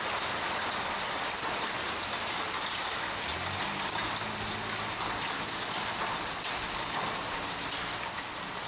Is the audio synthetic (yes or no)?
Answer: no